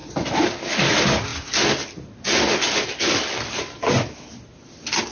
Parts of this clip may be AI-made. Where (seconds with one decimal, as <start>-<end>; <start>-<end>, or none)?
none